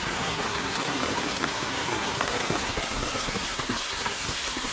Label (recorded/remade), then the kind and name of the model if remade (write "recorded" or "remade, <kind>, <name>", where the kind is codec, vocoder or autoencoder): remade, codec, SNAC